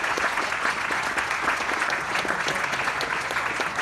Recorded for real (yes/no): no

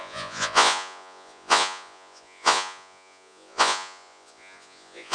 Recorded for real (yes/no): no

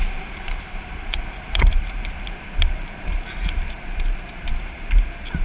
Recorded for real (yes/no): no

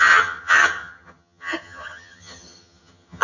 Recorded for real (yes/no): no